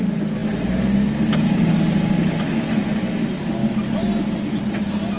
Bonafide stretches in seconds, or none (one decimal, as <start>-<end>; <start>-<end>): 0.0-5.2